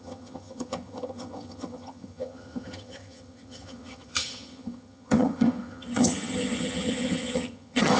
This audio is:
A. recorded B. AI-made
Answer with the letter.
B